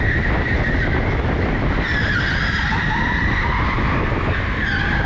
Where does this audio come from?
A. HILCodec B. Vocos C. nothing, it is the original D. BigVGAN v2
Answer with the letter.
C